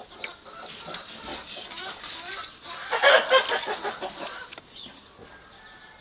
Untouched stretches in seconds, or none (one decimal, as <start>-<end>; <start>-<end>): 0.0-1.3; 2.3-6.0